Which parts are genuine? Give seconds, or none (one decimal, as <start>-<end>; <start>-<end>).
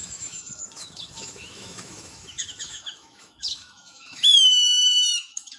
none